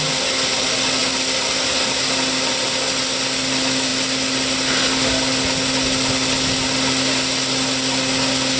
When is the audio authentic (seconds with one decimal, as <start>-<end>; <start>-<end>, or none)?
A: 0.0-8.6